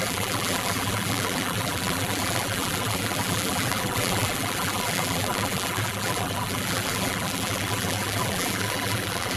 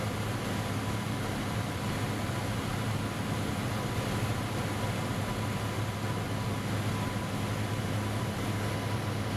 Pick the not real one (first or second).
first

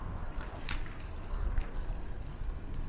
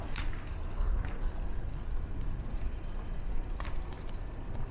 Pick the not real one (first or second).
first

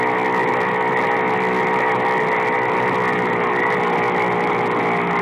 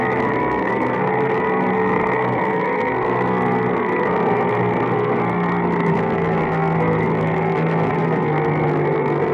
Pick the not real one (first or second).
second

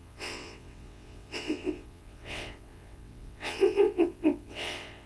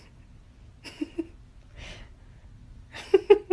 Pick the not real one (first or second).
first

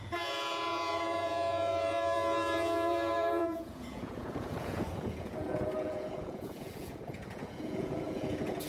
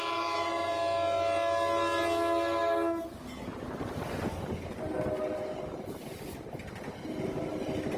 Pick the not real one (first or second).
first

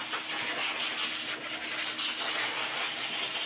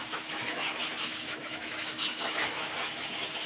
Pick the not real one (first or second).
second